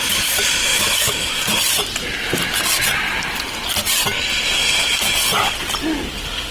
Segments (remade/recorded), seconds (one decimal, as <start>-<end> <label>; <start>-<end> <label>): 0.0-0.6 recorded; 0.6-1.3 remade; 1.3-6.5 recorded